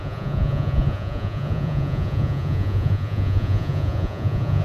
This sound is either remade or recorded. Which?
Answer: remade